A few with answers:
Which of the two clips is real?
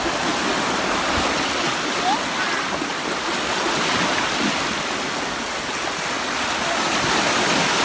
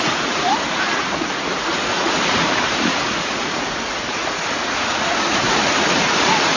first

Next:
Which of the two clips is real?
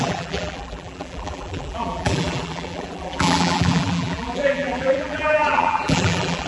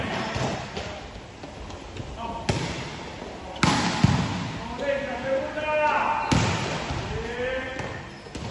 second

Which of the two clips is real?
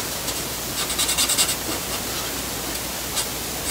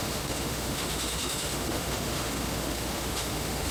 first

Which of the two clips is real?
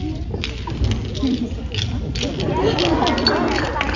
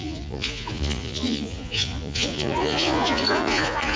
first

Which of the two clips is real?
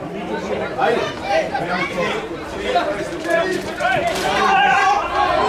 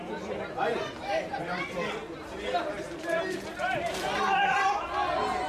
second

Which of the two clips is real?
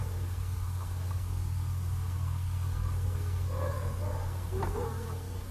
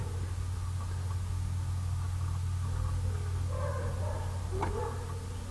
second